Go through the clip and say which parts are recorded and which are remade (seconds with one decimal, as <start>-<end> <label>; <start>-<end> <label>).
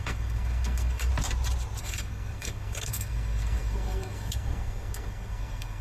0.0-1.1 remade; 1.1-1.8 recorded; 1.8-5.8 remade